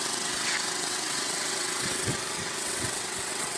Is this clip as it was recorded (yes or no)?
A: no